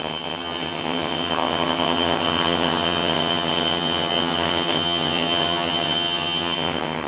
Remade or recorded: remade